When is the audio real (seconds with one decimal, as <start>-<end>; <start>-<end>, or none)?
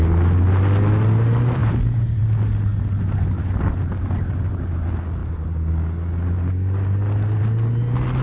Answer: 0.0-8.2